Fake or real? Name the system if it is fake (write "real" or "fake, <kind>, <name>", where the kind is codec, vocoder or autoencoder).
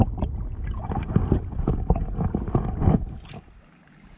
real